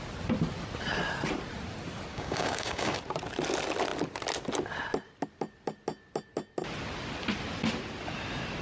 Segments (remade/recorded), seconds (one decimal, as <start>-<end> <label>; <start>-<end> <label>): 0.0-2.1 recorded; 2.1-3.0 remade; 3.0-8.6 recorded